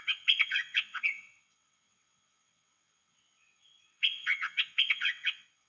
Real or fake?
fake